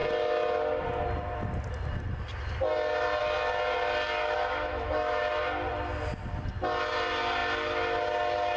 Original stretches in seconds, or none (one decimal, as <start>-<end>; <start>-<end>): 0.0-4.2; 5.2-8.6